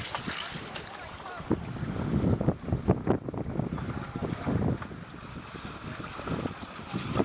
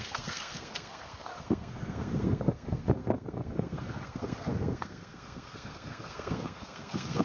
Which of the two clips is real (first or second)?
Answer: first